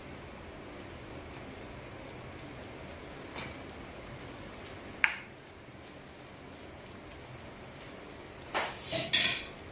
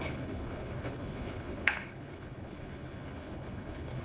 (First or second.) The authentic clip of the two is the first